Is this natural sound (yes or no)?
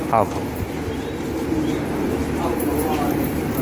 no